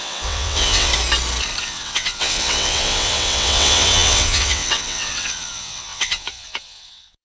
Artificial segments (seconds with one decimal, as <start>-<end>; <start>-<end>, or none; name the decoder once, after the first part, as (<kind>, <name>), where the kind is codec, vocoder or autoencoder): 0.0-0.9 (vocoder, WaveNeXt); 1.6-7.2